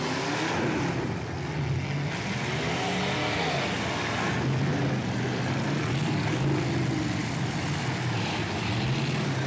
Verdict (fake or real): real